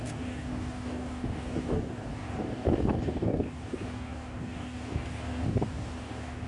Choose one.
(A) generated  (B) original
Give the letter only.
A